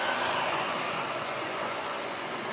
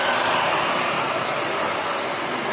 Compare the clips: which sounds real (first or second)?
second